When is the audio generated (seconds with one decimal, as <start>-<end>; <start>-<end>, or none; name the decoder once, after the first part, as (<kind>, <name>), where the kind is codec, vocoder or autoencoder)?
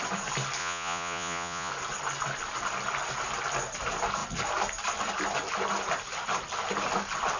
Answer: 0.6-1.7 (vocoder, Vocos)